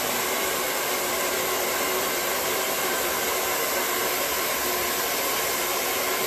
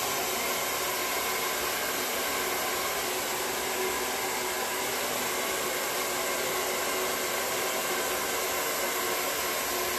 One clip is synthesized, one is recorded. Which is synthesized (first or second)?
first